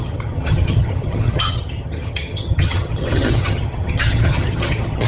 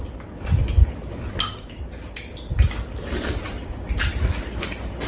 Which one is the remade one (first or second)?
first